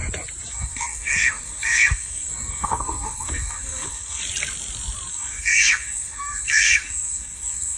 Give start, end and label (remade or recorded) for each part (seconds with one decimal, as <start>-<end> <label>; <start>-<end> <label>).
0.0-0.5 recorded; 0.5-4.2 remade; 4.2-5.1 recorded; 5.1-7.8 remade